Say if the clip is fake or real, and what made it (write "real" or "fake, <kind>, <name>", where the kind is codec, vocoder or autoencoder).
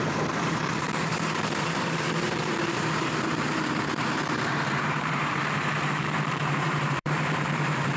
fake, vocoder, BigVGAN v2